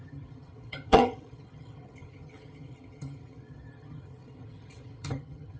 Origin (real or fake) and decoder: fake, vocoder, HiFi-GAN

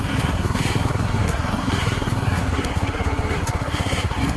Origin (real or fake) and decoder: fake, codec, SNAC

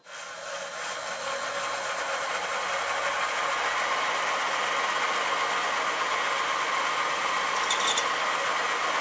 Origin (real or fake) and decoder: real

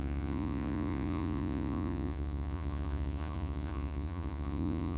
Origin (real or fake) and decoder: fake, vocoder, Vocos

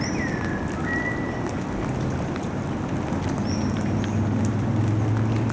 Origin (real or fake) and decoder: real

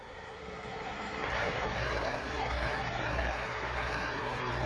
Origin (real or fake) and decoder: fake, codec, SNAC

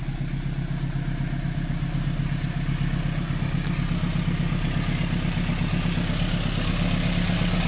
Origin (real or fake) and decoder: real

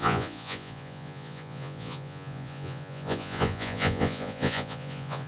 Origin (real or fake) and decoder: fake, vocoder, Vocos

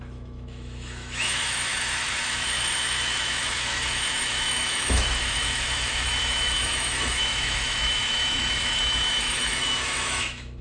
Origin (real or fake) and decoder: fake, autoencoder, DAC-VAE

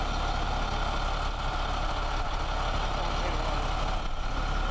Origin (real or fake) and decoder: real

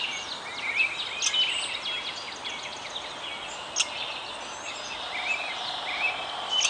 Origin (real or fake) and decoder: real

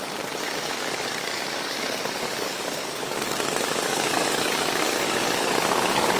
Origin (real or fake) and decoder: fake, codec, DAC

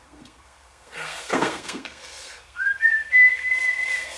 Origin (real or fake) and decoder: fake, codec, SNAC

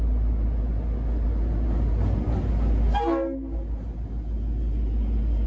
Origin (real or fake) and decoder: real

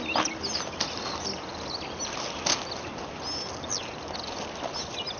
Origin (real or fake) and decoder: real